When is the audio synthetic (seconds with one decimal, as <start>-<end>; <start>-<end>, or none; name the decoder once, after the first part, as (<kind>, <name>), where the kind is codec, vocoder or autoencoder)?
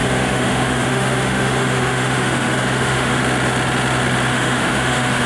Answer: 0.0-3.2 (autoencoder, DAC-VAE); 4.3-5.3